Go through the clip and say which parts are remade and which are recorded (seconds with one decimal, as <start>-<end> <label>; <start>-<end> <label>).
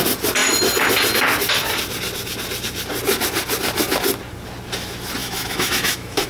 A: 0.0-5.2 recorded; 5.2-6.3 remade